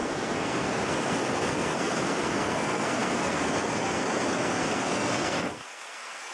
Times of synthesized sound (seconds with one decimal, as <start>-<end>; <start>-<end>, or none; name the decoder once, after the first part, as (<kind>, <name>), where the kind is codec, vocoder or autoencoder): 0.0-6.3 (codec, SNAC)